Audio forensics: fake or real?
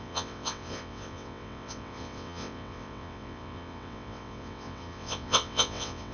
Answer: fake